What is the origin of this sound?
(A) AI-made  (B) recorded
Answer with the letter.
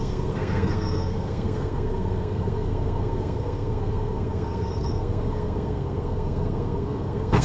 A